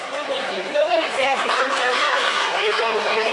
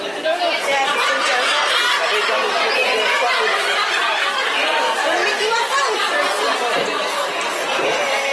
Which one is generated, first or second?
first